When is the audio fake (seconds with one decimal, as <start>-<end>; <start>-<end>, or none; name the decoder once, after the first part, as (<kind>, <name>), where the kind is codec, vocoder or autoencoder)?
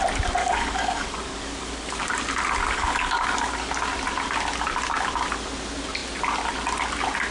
0.4-2.0 (codec, DAC); 2.6-3.7